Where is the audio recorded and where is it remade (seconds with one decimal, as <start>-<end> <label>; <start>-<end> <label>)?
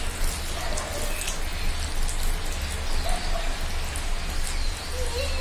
0.0-5.4 recorded